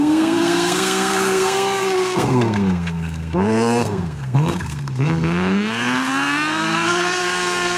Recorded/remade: remade